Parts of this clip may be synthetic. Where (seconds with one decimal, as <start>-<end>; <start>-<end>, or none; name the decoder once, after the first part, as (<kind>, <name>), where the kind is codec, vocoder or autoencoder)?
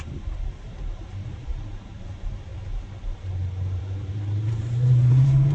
0.0-5.5 (vocoder, BigVGAN v2)